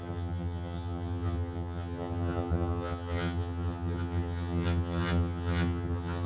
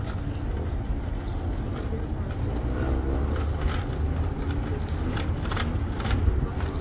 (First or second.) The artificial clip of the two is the first